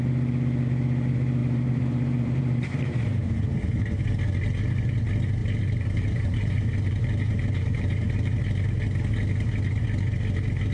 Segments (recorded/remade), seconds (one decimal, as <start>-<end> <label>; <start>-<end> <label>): 0.0-1.4 recorded; 1.4-3.7 remade; 3.7-5.4 recorded; 5.4-8.4 remade; 8.4-10.7 recorded